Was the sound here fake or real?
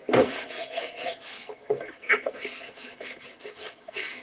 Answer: fake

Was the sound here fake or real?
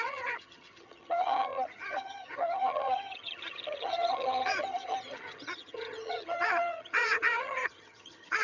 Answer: fake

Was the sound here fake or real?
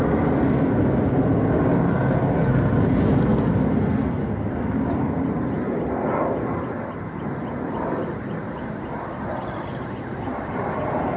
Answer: real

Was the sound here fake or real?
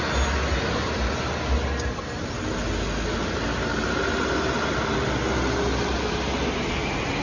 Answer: real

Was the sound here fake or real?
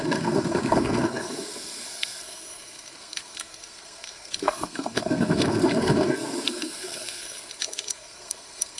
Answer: fake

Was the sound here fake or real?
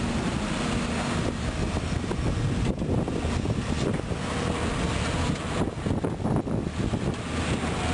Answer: real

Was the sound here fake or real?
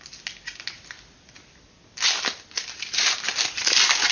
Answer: real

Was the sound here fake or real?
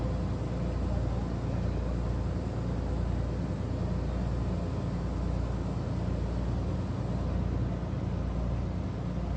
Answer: real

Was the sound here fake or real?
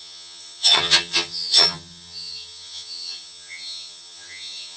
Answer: fake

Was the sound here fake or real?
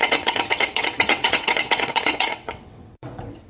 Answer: fake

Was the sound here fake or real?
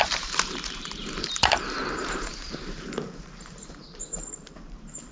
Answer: fake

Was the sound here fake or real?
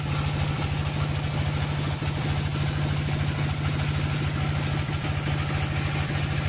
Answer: real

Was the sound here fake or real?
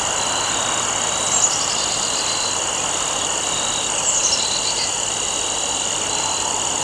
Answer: real